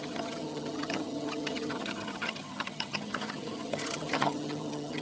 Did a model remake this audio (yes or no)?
yes